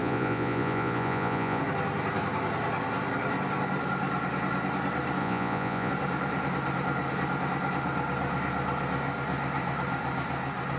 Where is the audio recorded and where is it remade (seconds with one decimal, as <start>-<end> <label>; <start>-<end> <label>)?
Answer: 0.0-1.6 remade; 1.6-5.2 recorded; 5.2-5.9 remade; 5.9-10.8 recorded